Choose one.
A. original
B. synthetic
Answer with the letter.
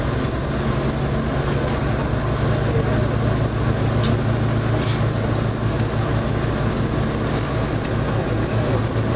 A